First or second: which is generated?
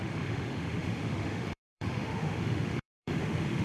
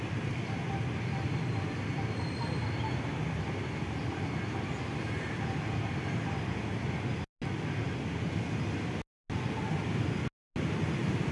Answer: first